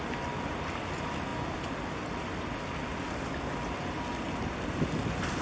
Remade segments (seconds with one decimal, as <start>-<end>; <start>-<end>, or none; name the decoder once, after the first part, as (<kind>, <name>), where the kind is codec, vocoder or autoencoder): none